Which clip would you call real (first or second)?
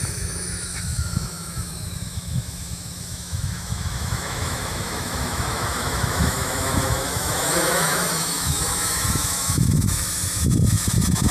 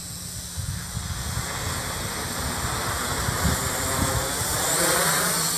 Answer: second